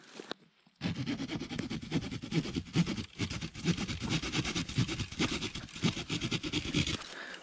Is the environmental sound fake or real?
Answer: real